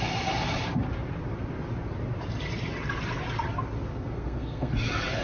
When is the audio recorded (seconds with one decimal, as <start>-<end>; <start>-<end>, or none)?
0.0-3.9; 4.7-5.2